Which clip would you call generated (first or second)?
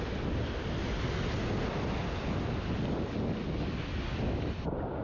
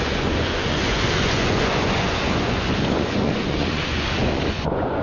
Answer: second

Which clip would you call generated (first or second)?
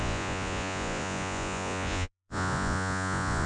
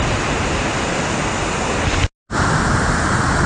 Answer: first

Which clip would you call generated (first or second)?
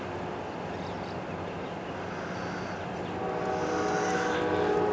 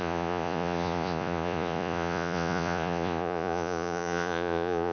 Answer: second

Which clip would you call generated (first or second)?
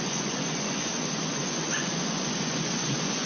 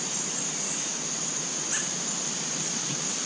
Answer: first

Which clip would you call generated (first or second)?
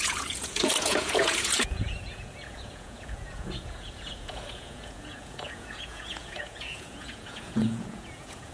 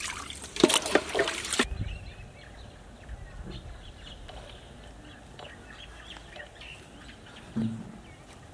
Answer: first